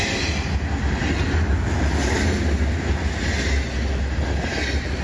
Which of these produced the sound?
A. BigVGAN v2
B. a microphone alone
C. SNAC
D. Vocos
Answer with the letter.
B